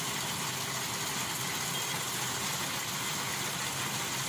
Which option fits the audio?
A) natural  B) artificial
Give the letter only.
A